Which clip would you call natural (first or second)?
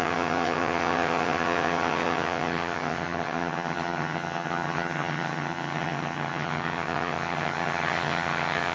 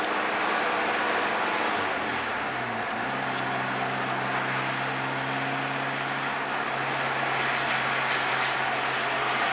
second